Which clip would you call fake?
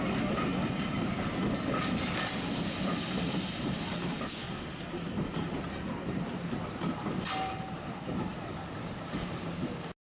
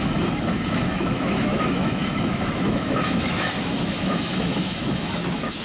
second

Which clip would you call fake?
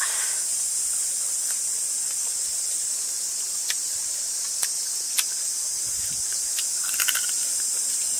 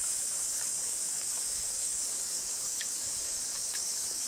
second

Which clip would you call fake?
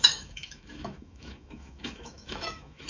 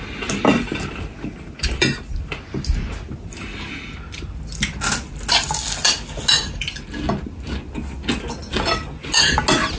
first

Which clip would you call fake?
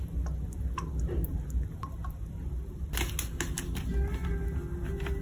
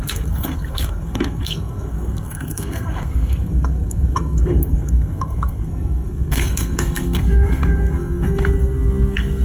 second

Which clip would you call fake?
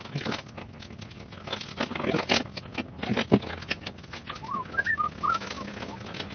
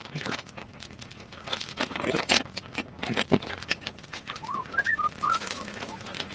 second